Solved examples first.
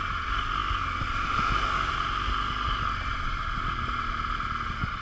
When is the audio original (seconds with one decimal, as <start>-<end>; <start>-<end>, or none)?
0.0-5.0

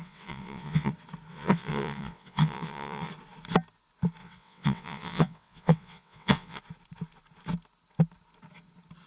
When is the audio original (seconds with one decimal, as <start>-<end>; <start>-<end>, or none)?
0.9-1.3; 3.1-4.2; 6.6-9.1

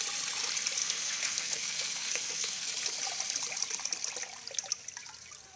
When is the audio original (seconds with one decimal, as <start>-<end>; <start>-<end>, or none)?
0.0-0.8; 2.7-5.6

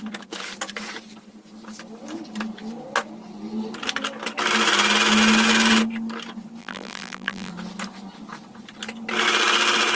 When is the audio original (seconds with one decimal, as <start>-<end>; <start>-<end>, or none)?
0.0-6.6; 7.5-9.9

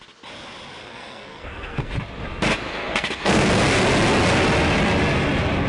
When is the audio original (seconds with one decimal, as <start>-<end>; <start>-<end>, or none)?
0.0-0.8; 1.9-2.7; 3.4-5.7

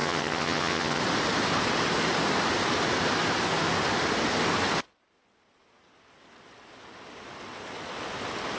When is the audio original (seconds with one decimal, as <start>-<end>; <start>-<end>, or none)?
1.0-8.6

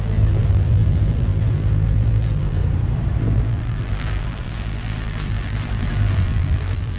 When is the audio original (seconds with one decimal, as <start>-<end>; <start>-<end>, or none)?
2.6-3.2